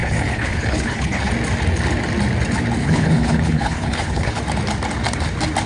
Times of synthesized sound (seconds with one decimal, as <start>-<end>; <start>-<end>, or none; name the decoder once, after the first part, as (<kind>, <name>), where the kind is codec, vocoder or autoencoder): 0.0-1.3 (codec, HILCodec); 2.8-4.4